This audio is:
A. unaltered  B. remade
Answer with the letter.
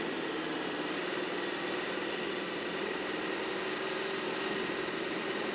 A